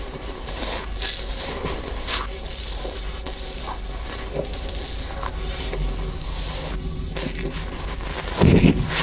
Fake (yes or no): no